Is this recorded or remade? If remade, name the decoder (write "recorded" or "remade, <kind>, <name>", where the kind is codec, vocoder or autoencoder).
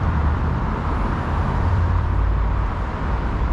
remade, vocoder, BigVGAN v2